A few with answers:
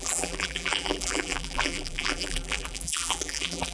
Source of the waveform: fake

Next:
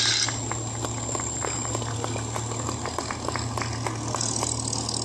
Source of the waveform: real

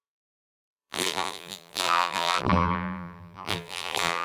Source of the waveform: fake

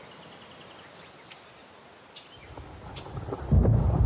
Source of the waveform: real